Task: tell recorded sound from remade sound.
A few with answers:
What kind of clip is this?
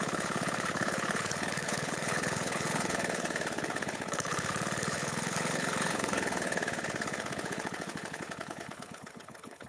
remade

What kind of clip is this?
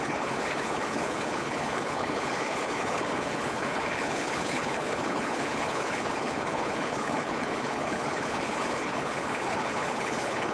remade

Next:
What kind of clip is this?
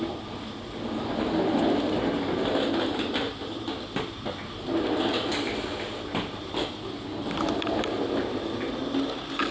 recorded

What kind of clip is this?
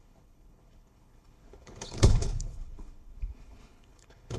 remade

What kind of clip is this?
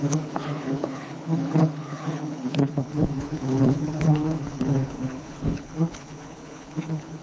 remade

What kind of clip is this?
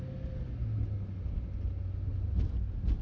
recorded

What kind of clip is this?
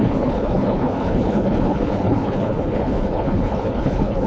remade